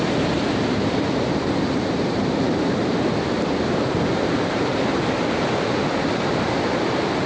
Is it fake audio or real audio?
fake